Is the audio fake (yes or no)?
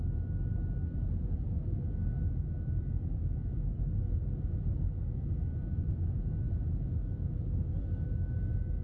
no